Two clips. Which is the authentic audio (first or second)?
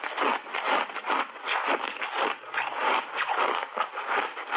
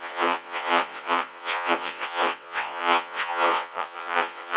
first